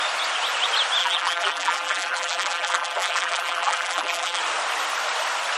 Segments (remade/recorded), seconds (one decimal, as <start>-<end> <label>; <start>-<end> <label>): 0.0-1.0 recorded; 1.0-4.4 remade; 4.4-5.6 recorded